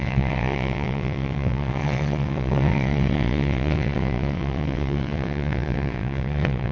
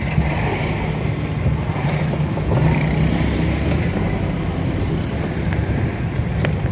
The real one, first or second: second